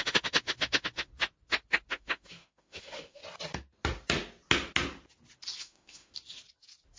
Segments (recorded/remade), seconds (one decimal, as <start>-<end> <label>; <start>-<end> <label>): 0.0-1.1 remade; 1.1-1.9 recorded; 1.9-3.2 remade; 3.2-5.6 recorded; 5.6-6.1 remade; 6.1-7.0 recorded